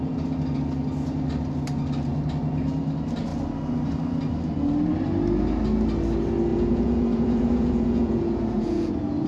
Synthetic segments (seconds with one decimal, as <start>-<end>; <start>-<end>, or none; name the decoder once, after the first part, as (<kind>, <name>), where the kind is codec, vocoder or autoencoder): 6.5-8.9 (vocoder, Vocos)